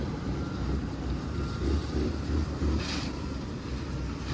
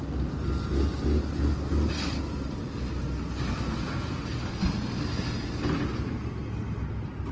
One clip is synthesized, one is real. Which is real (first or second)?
second